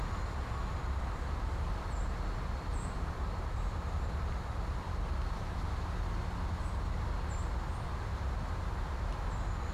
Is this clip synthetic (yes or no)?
no